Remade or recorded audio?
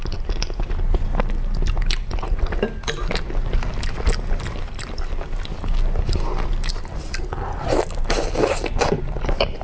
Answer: recorded